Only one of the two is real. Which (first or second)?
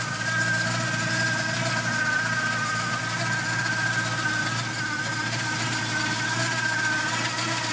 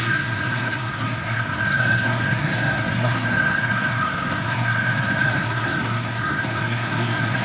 first